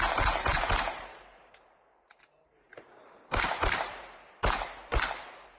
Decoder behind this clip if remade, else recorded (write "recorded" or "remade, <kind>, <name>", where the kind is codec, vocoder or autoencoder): remade, vocoder, BigVGAN v2